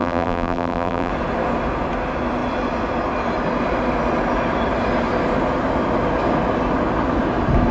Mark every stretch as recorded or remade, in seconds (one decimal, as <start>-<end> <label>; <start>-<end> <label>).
0.0-1.1 remade; 1.1-7.7 recorded